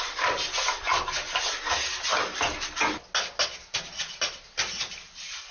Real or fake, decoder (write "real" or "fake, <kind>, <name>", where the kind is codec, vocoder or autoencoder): real